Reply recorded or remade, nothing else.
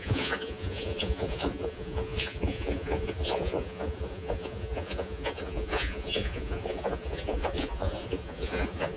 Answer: remade